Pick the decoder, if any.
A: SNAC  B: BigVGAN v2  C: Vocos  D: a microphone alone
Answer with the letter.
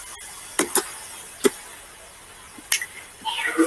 D